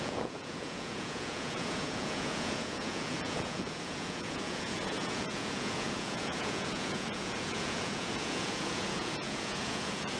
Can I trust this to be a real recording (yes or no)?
no